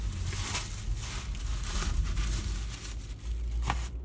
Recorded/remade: recorded